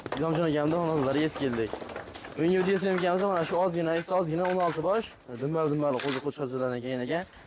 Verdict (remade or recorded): recorded